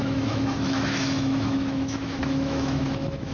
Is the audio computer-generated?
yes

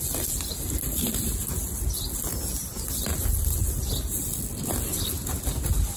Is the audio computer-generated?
no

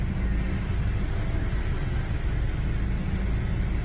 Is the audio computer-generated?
no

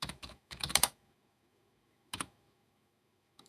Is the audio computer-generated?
yes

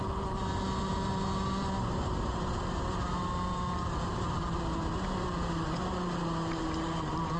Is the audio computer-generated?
no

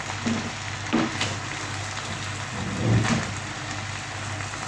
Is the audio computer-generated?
no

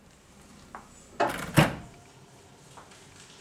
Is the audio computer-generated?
no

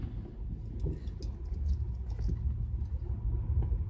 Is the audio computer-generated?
no